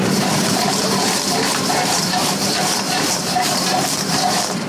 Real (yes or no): no